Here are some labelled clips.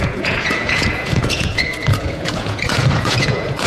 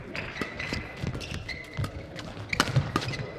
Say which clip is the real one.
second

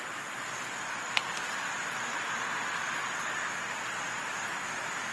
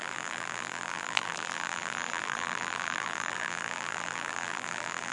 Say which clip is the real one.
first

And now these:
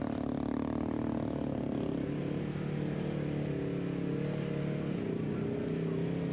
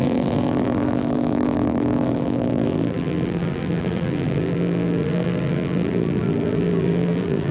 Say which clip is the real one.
first